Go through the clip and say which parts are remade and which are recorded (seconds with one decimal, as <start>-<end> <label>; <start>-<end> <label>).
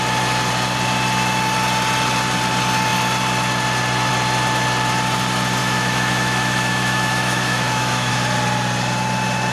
0.0-5.6 recorded; 5.6-8.1 remade; 8.1-9.5 recorded